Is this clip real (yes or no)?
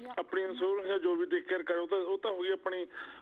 yes